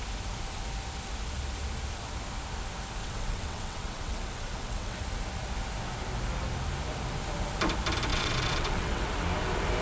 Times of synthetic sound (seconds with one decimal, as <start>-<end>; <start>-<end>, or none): 3.0-5.0; 8.1-9.1